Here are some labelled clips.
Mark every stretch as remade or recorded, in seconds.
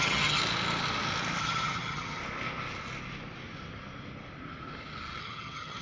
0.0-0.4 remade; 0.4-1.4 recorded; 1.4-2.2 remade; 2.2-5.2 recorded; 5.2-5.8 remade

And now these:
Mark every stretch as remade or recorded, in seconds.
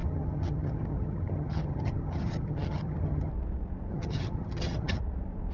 0.0-3.3 remade; 3.3-3.9 recorded; 3.9-5.0 remade; 5.0-5.5 recorded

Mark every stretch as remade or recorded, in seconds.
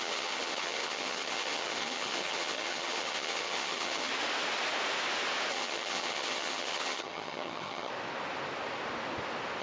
0.0-4.1 remade; 4.1-5.5 recorded; 5.5-7.9 remade; 7.9-9.6 recorded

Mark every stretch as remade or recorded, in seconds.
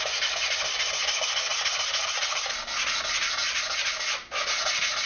0.0-5.1 recorded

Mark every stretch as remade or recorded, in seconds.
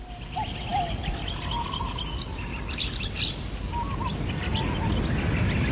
0.0-5.7 recorded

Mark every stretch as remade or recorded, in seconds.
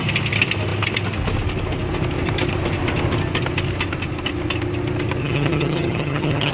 0.0-5.2 recorded; 5.2-6.5 remade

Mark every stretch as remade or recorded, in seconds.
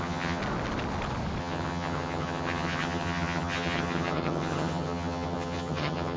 0.0-0.4 remade; 0.4-1.4 recorded; 1.4-6.2 remade